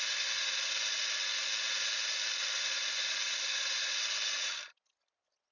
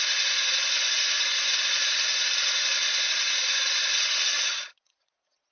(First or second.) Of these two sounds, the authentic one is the first